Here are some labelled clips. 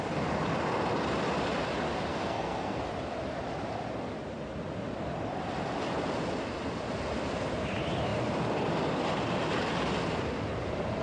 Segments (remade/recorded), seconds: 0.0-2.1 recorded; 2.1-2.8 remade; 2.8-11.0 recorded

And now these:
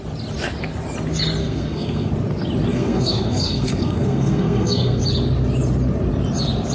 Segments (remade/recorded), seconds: 0.0-1.4 recorded; 1.4-2.1 remade; 2.1-2.7 recorded; 2.7-5.0 remade; 5.0-6.7 recorded

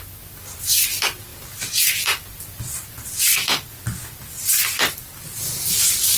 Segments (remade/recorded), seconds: 0.0-6.2 recorded